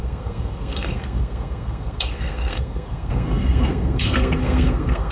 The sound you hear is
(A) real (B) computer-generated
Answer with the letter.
B